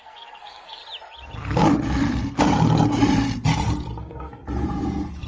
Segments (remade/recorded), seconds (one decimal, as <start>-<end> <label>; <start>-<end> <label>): 0.0-0.8 remade; 0.8-4.0 recorded; 4.0-4.4 remade; 4.4-5.3 recorded